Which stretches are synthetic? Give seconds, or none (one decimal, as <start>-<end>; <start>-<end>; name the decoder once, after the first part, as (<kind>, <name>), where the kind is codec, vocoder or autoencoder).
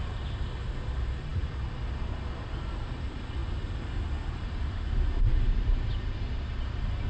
none